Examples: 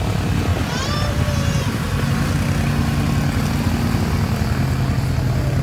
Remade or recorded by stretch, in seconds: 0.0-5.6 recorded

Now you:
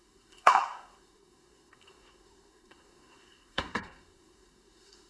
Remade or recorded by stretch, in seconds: 0.0-5.1 remade

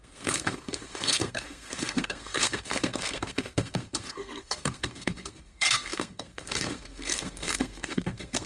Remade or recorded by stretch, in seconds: 0.0-8.5 remade

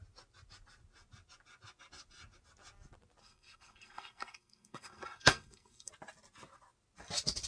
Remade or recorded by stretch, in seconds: 0.0-3.2 recorded; 3.2-5.9 remade; 5.9-7.5 recorded